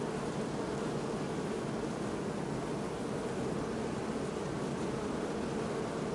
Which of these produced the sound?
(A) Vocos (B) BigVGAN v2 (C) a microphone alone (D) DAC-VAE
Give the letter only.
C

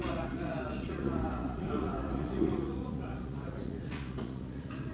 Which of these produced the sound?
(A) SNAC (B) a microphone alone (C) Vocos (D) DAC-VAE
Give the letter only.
C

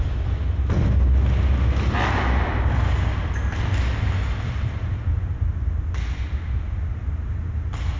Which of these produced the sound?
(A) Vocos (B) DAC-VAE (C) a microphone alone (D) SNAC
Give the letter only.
C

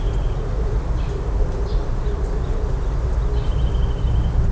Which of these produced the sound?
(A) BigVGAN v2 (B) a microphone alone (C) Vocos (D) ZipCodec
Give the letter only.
B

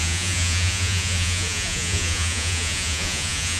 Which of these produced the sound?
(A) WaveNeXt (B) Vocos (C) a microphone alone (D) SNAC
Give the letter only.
B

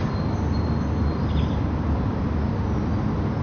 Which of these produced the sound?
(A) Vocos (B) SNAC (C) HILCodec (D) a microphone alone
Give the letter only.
D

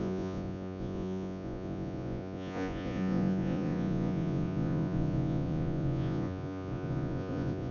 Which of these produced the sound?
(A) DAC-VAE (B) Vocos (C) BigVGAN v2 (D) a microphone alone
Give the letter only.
B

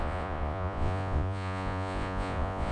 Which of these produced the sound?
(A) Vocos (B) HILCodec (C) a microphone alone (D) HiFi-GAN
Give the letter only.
A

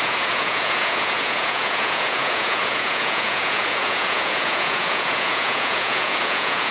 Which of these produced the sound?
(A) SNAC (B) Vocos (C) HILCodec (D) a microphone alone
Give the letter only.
B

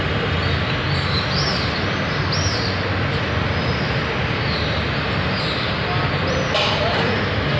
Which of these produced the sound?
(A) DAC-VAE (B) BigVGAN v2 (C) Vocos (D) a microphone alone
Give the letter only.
D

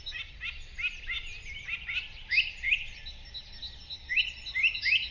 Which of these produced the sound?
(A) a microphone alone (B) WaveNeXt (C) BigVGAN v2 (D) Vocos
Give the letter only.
A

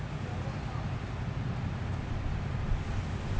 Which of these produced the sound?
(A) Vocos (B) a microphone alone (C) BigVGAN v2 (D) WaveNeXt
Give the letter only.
B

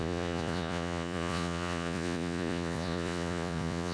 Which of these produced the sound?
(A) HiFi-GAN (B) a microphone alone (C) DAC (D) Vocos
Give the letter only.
D